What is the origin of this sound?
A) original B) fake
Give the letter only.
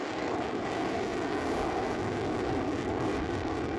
B